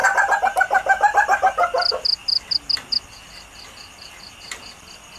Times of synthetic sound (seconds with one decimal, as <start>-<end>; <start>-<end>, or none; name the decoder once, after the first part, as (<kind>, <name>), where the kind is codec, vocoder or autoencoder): none